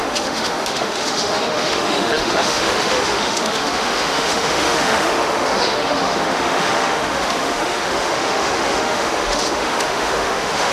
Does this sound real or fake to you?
fake